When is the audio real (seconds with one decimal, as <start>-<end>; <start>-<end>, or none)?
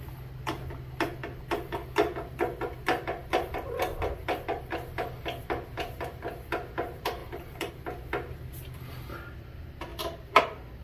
0.0-7.2; 7.7-10.8